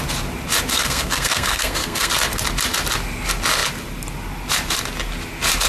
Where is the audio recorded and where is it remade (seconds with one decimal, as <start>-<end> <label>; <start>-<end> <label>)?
0.0-0.7 recorded; 0.7-2.1 remade; 2.1-5.7 recorded